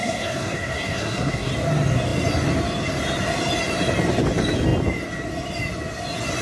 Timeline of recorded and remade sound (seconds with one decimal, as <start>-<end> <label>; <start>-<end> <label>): 0.0-1.5 remade; 1.5-6.4 recorded